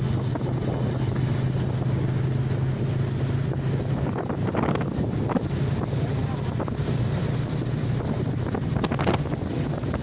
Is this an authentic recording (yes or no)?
yes